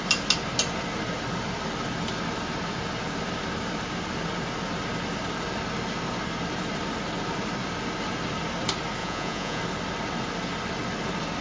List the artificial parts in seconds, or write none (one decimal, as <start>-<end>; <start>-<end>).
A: 9.0-9.6